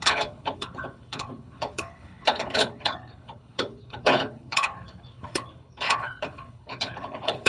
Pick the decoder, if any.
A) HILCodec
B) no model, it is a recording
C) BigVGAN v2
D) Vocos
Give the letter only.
A